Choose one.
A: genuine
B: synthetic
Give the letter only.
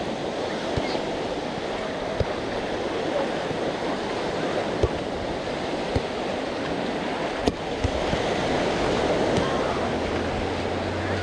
A